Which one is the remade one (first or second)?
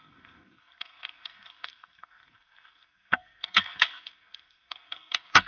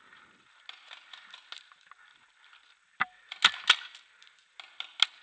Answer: first